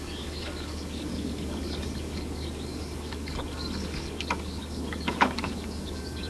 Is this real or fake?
fake